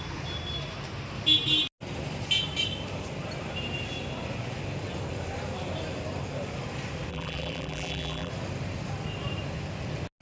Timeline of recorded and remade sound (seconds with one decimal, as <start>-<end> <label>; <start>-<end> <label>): 0.0-7.1 recorded; 7.1-8.3 remade; 8.3-10.2 recorded